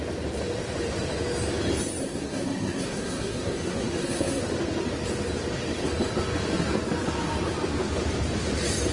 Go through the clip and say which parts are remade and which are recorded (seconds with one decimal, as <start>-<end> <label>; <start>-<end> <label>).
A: 0.0-2.0 recorded; 2.0-4.4 remade; 4.4-8.9 recorded